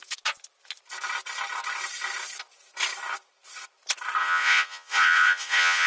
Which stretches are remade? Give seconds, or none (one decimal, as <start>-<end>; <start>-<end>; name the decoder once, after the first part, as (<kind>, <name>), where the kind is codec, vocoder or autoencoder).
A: 4.2-5.9 (vocoder, Vocos)